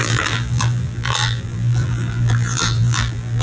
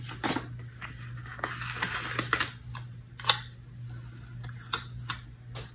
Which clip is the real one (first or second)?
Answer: second